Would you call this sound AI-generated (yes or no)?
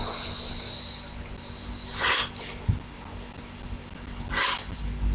no